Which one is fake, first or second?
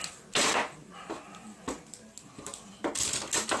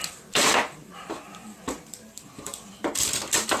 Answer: second